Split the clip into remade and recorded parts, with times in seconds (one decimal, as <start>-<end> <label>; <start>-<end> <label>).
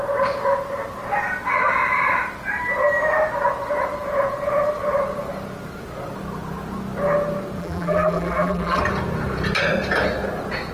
0.0-7.6 recorded; 7.6-8.8 remade; 8.8-10.7 recorded